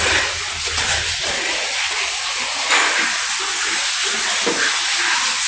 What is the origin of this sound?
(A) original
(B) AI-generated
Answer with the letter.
A